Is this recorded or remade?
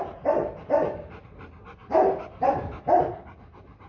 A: recorded